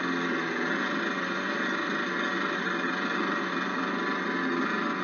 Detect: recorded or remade recorded